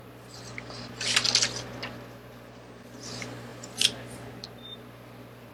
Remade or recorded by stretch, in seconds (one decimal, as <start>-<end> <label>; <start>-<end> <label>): 0.0-5.5 recorded